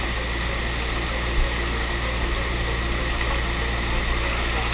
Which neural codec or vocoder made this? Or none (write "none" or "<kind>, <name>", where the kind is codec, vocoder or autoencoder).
none